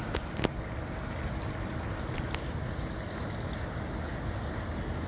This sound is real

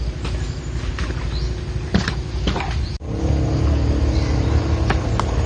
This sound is real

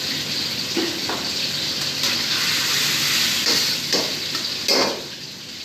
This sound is real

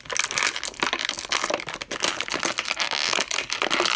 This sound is real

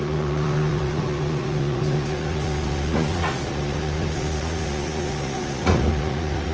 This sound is fake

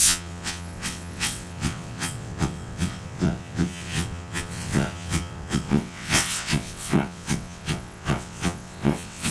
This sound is fake